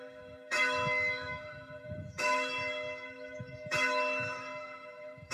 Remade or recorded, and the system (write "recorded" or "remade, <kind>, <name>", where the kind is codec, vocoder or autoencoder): remade, autoencoder, DAC-VAE